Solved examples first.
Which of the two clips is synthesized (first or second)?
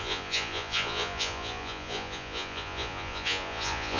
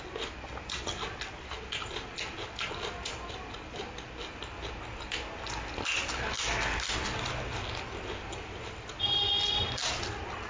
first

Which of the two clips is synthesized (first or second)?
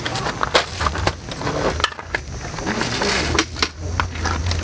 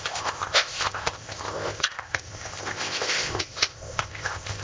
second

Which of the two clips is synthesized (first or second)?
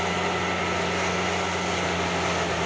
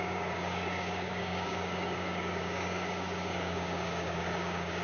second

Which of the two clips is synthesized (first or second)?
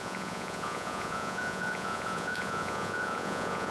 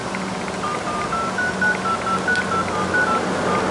first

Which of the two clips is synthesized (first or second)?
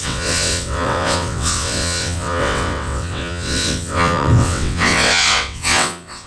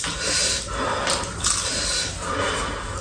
first